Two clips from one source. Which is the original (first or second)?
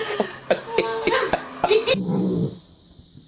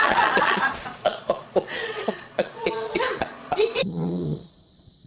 first